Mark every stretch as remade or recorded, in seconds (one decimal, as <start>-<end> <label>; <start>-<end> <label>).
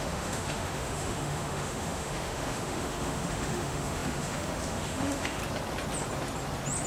0.0-5.4 remade; 5.4-6.9 recorded